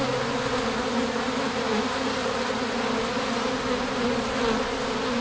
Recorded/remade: recorded